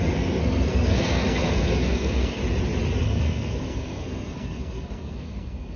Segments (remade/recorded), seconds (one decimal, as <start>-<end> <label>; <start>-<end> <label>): 0.0-2.4 remade; 2.4-3.0 recorded; 3.0-5.8 remade